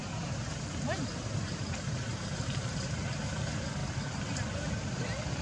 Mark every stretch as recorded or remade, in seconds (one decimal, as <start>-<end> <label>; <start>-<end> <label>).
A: 0.0-3.2 remade; 3.2-5.4 recorded